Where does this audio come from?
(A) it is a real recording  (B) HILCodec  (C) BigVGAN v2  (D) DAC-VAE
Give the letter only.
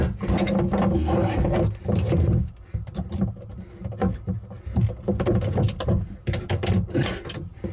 A